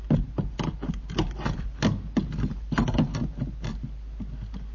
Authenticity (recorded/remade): recorded